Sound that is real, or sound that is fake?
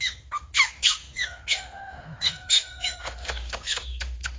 fake